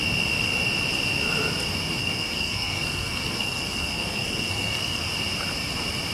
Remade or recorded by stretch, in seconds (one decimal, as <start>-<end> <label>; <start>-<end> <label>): 0.0-2.0 recorded; 2.0-5.1 remade; 5.1-6.1 recorded